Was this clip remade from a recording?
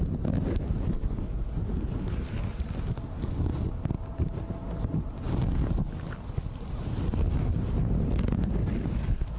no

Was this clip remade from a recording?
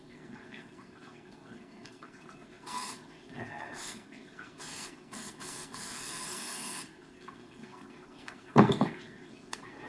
yes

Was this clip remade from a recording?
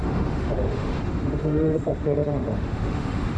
yes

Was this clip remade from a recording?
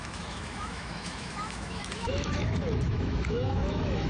yes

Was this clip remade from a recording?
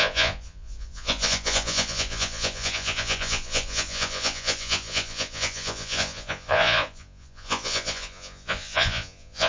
yes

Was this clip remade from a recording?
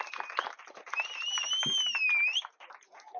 no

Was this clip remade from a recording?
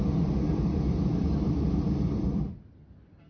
no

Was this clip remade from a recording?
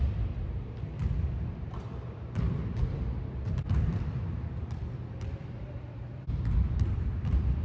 yes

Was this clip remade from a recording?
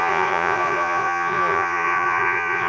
yes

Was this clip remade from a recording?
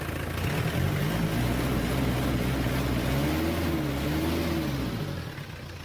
no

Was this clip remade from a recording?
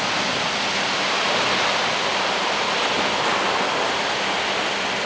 no